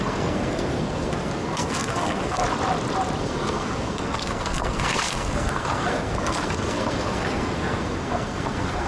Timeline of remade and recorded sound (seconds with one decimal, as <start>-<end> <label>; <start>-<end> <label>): 0.0-2.4 remade; 2.4-3.2 recorded; 3.2-8.9 remade